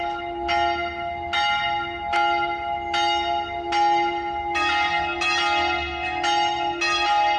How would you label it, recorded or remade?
recorded